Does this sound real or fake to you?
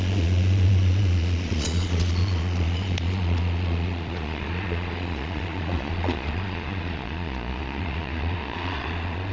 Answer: fake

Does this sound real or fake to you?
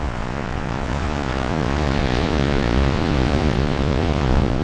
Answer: fake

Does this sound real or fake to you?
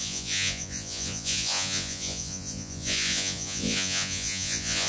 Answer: fake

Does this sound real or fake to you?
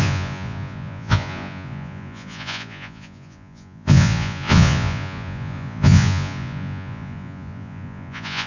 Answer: fake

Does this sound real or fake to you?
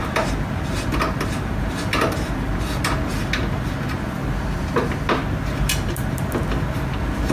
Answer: real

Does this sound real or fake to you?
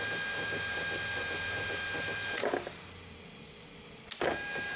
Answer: real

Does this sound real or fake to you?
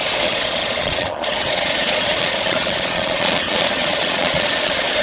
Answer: fake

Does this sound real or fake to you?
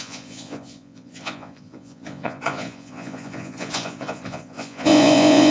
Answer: fake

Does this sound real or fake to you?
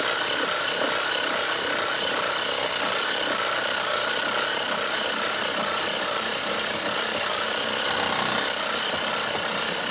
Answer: real